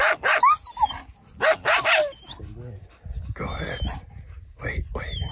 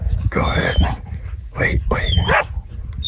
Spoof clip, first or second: second